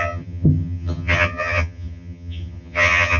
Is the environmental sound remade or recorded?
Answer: remade